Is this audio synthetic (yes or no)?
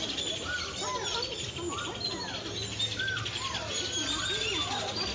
no